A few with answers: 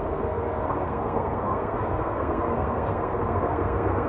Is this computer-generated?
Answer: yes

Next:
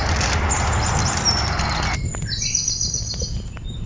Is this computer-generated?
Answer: no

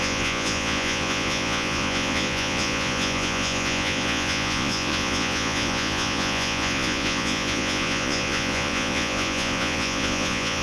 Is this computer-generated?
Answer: yes